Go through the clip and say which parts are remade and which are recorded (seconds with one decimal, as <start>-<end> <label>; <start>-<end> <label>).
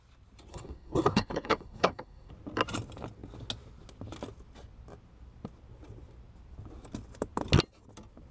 0.0-0.5 recorded; 0.5-2.3 remade; 2.3-8.3 recorded